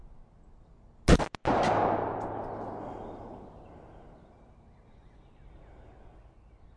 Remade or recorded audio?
recorded